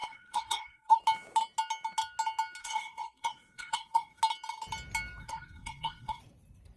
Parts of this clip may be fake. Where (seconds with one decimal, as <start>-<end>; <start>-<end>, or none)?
0.0-1.0; 2.6-4.2; 5.2-6.2